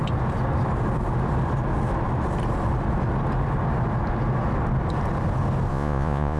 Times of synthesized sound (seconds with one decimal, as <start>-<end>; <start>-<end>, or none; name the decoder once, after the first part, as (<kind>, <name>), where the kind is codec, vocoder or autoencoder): 5.7-6.4 (vocoder, Vocos)

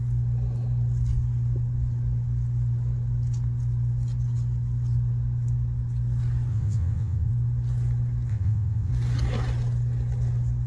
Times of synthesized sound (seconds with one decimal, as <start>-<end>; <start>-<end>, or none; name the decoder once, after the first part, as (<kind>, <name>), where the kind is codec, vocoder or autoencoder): 6.5-7.3 (vocoder, WaveNeXt); 8.3-8.9

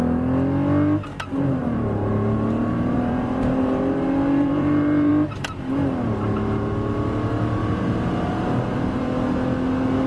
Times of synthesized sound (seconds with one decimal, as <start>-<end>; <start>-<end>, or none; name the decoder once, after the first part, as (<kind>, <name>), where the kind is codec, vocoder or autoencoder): 1.6-5.1 (vocoder, BigVGAN v2); 7.6-9.0

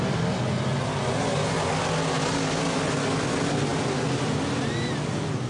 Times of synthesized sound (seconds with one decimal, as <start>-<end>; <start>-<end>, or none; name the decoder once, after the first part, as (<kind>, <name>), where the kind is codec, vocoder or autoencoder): none